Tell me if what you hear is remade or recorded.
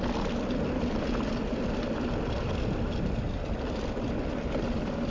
recorded